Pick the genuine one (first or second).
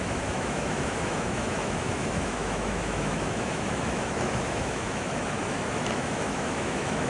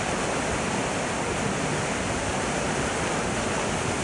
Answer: second